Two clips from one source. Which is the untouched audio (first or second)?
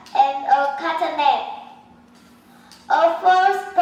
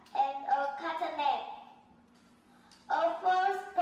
first